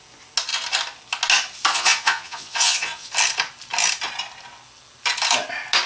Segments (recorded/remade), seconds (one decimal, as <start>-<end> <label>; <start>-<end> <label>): 0.0-1.7 recorded; 1.7-3.1 remade; 3.1-5.9 recorded